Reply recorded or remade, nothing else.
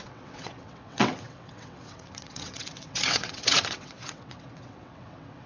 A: remade